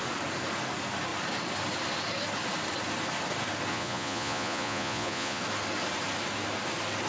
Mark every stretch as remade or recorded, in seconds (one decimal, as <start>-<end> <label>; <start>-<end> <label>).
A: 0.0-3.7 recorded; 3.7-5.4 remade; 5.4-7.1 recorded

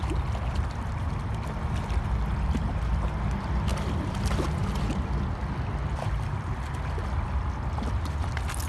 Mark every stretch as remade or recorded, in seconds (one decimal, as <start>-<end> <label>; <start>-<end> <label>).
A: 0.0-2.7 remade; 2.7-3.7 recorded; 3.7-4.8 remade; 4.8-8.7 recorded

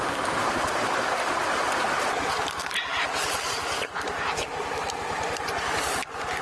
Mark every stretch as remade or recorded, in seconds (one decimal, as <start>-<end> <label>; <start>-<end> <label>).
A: 0.0-2.9 remade; 2.9-4.9 recorded; 4.9-6.4 remade

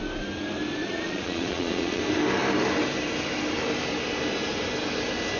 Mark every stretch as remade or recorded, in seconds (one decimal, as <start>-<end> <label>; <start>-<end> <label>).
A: 0.0-0.8 recorded; 0.8-2.0 remade; 2.0-5.4 recorded